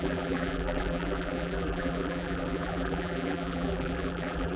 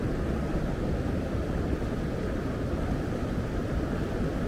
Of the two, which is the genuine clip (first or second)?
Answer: second